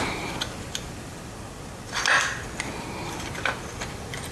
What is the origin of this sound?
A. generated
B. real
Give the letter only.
B